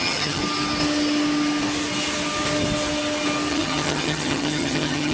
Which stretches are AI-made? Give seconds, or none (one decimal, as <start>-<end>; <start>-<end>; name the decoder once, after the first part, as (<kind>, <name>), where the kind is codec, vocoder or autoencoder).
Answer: 0.0-0.4 (vocoder, HiFi-GAN); 3.5-5.1